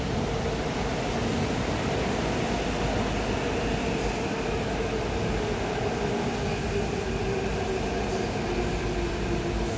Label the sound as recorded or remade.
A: recorded